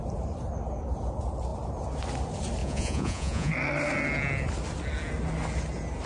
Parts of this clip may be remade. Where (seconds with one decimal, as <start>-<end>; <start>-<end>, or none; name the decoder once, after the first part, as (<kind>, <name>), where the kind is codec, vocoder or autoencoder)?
2.6-3.5 (vocoder, Vocos)